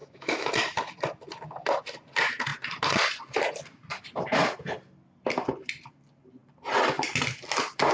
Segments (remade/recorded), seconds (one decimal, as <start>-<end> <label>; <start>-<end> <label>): 0.0-0.5 remade; 0.5-7.9 recorded